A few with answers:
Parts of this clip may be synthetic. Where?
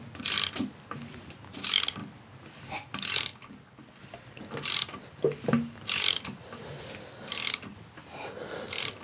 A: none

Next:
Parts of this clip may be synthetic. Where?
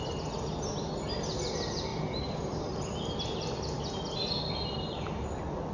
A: none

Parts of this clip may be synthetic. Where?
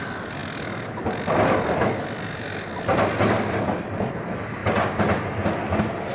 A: none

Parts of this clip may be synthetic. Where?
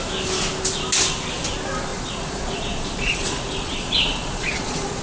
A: 1.9-5.0 (vocoder, Vocos)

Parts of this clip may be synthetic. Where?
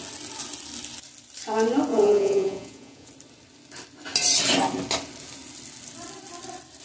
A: 1.9-3.1 (vocoder, Vocos)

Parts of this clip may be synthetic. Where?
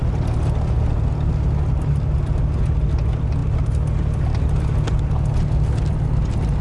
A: none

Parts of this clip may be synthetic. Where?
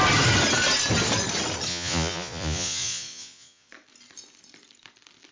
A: 1.7-3.7 (vocoder, Vocos)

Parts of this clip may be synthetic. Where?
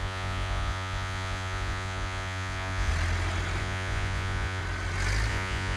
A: 0.0-2.9 (vocoder, Vocos); 3.6-4.6; 5.3-5.8